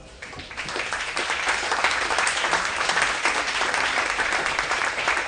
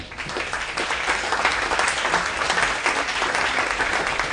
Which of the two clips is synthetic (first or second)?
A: first